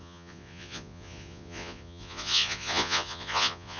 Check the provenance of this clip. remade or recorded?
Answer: remade